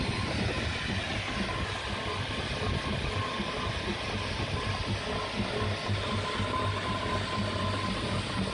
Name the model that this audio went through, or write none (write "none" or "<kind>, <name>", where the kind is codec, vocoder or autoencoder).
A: none